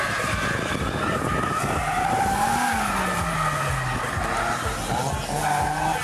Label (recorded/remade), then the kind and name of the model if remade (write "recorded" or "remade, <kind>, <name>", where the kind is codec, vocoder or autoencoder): recorded